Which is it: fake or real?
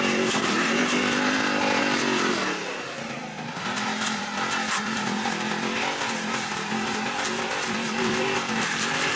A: fake